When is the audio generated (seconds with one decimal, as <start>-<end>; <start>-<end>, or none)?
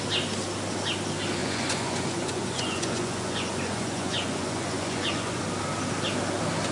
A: 1.4-5.4